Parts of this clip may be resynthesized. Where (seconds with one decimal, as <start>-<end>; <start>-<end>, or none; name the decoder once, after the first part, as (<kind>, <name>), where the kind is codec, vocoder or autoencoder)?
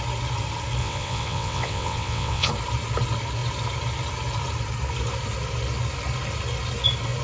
0.8-2.5 (vocoder, WaveNeXt)